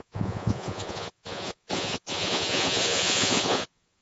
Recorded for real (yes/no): no